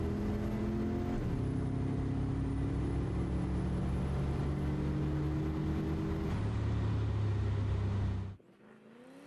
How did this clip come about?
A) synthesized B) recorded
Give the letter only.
B